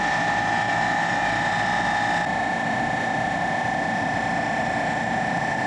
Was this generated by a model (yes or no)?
no